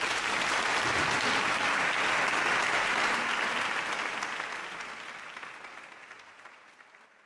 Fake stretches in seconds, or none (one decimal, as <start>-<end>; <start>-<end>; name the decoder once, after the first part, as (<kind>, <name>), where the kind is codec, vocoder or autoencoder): none